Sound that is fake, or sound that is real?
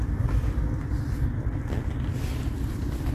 real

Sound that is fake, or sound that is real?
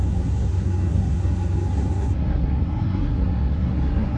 fake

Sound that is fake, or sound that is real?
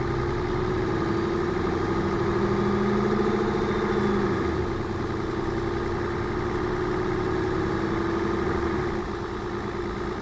real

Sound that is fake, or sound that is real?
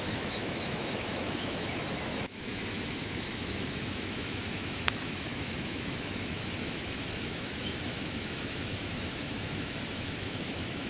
fake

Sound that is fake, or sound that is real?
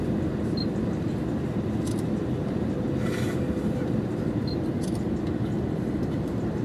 real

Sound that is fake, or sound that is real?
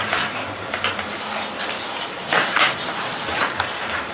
fake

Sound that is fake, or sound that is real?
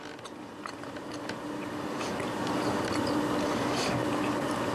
real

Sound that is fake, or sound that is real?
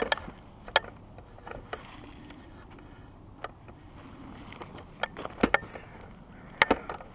real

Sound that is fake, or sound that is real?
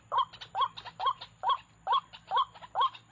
real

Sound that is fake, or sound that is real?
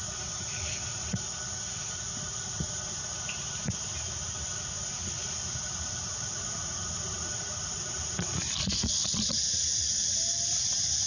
real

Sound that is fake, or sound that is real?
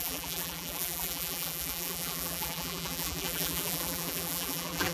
fake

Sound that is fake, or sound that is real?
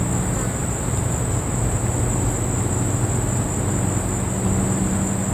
real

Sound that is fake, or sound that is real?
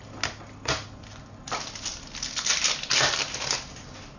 real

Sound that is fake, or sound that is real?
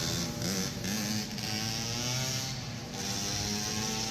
real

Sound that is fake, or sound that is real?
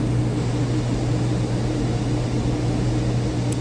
real